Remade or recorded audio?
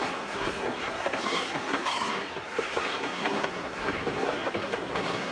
remade